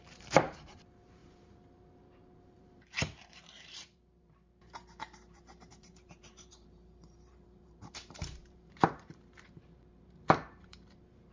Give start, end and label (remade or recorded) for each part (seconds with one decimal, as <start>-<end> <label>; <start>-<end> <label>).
0.0-11.3 remade